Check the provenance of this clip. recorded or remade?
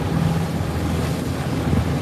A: recorded